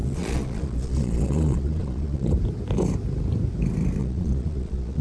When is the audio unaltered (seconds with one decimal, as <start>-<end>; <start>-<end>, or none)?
2.3-4.0